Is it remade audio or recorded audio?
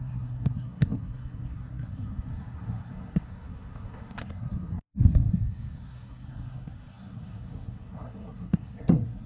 remade